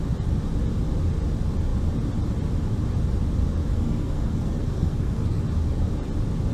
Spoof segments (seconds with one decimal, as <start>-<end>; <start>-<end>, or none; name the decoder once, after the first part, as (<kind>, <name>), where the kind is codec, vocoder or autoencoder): 3.7-5.4 (codec, SNAC)